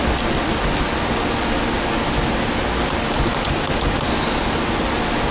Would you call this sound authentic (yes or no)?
yes